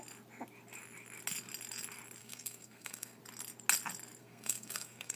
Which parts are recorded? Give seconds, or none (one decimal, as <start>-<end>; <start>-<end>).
0.0-2.2; 3.2-4.2